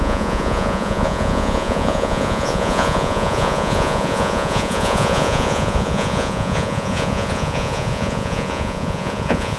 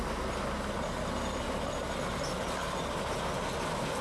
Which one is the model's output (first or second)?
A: first